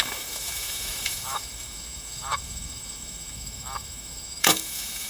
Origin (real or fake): fake